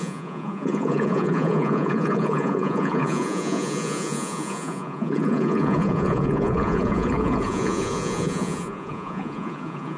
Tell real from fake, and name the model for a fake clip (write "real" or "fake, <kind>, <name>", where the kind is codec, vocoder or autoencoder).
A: fake, vocoder, Vocos